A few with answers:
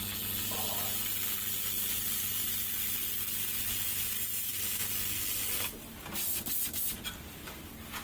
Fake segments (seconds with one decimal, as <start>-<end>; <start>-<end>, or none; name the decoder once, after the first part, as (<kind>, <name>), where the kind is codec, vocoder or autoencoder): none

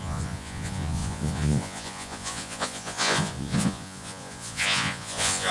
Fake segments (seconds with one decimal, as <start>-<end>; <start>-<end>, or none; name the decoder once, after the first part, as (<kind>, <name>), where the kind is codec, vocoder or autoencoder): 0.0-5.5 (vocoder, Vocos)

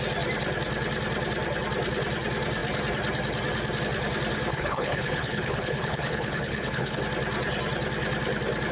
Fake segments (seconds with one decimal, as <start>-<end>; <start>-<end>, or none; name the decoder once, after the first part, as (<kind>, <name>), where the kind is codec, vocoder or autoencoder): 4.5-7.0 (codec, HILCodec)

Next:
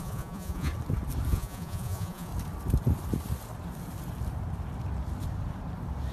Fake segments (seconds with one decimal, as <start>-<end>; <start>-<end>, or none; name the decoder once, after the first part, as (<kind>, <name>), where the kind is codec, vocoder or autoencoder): 0.0-0.7 (vocoder, Vocos); 1.3-2.3

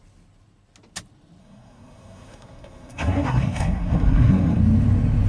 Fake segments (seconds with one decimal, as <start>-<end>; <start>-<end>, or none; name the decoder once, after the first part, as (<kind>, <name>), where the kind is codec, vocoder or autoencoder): 1.4-4.6 (codec, SNAC)

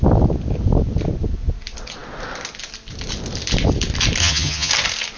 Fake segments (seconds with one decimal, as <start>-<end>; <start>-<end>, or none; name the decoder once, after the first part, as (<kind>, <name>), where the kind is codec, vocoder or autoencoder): 4.2-4.7 (vocoder, HiFi-GAN)

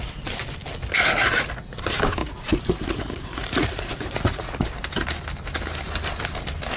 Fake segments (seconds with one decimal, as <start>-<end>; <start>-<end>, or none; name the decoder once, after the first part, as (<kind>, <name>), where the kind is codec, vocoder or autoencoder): 2.2-4.7 (vocoder, Vocos)

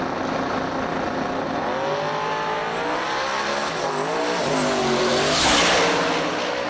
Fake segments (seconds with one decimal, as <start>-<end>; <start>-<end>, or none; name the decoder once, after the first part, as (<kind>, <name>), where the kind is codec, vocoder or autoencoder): none